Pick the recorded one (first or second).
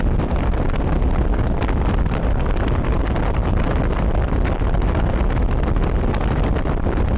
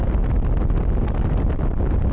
second